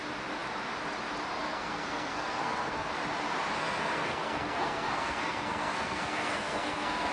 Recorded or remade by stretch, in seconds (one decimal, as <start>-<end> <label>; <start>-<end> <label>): 0.0-1.4 recorded; 1.4-2.9 remade; 2.9-3.6 recorded; 3.6-7.1 remade